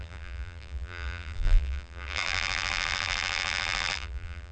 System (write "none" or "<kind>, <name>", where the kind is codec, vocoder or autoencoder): vocoder, BigVGAN v2